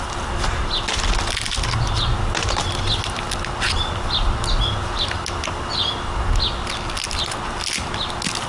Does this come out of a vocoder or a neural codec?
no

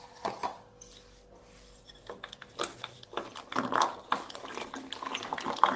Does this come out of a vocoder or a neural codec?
no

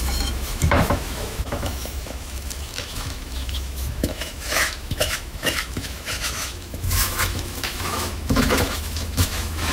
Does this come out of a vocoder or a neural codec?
yes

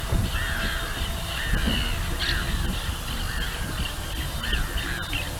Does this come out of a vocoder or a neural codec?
no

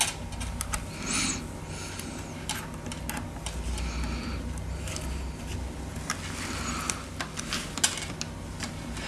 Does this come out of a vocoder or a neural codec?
no